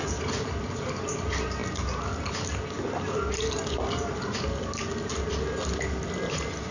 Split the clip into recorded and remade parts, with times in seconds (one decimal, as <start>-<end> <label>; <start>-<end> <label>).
0.0-6.7 recorded